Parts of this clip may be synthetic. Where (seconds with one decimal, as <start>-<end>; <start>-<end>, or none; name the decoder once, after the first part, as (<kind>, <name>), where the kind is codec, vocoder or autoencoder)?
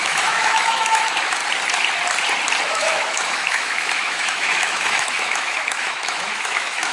0.0-1.4 (autoencoder, DAC-VAE); 2.6-6.9